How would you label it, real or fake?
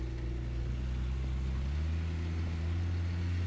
real